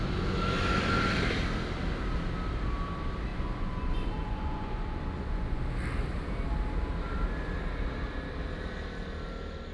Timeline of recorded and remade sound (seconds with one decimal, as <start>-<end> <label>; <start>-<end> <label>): 0.0-3.3 recorded; 3.3-5.6 remade; 5.6-9.7 recorded